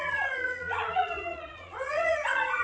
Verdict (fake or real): fake